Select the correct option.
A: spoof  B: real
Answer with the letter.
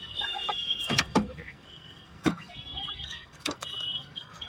A